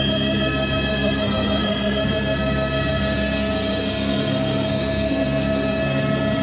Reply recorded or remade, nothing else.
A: remade